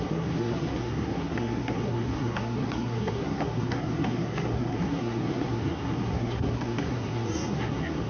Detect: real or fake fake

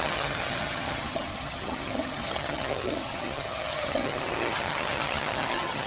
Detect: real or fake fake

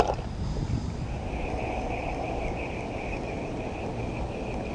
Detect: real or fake real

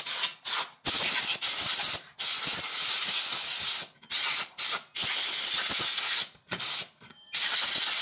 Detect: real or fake real